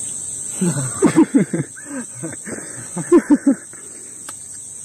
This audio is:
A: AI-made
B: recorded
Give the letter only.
A